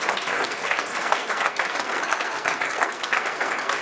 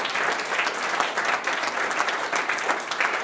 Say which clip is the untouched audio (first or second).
second